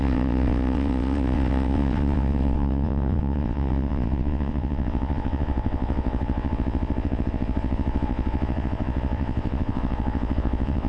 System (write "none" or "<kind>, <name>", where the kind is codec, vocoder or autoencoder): vocoder, WaveNeXt